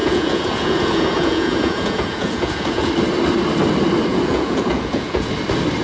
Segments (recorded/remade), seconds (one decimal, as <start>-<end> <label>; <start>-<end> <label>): 0.0-2.9 remade; 2.9-4.1 recorded; 4.1-5.3 remade; 5.3-5.8 recorded